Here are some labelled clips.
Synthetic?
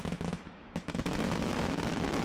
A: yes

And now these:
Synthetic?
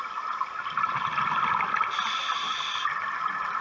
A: no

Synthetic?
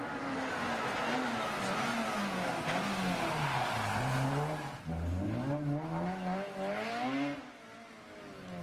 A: no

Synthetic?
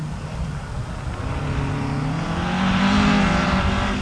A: no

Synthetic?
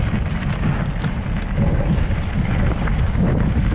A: no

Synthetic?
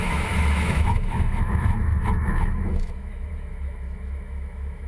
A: yes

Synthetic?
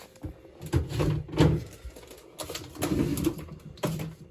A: no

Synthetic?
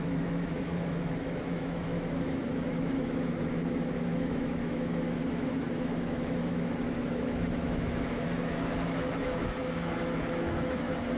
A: yes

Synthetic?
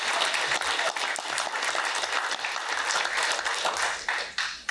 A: no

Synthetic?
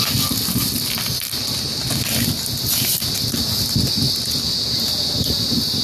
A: no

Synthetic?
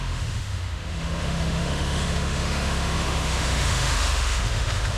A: yes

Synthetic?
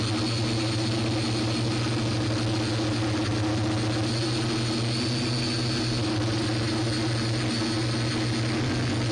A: no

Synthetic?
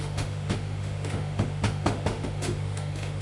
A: yes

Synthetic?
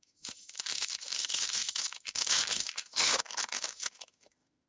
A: yes